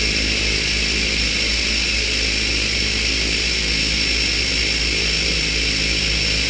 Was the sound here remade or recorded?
recorded